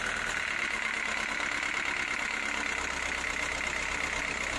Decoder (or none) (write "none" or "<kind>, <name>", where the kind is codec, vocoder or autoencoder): none